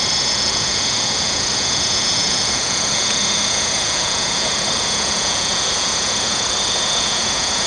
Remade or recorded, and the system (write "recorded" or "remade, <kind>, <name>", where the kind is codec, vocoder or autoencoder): remade, vocoder, Vocos